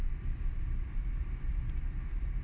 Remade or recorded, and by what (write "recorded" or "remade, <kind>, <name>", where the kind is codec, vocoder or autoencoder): recorded